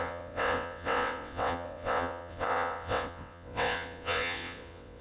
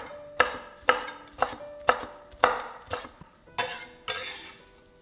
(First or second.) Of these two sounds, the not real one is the first